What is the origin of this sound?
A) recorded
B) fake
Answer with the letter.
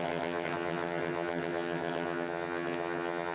B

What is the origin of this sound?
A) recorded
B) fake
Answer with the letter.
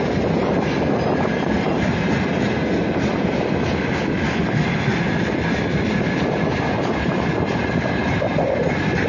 A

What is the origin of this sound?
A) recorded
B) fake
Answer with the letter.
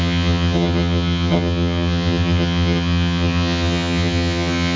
B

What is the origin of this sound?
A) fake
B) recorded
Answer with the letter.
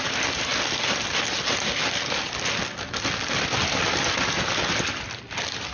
B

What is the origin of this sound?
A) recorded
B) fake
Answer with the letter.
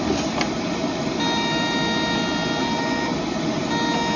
A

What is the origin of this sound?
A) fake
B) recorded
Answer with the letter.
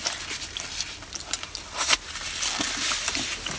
B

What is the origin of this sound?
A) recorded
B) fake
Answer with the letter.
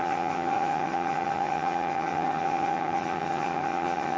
B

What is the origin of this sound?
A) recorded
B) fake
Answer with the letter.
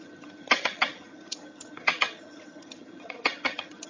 B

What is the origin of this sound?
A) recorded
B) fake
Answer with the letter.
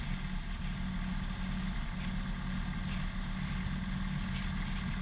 A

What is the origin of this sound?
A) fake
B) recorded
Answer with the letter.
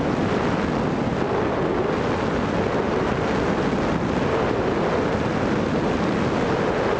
B